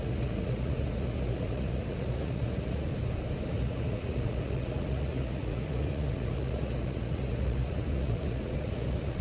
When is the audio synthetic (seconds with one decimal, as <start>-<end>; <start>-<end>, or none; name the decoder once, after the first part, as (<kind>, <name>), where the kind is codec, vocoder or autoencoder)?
0.0-2.9 (vocoder, Vocos); 3.5-9.2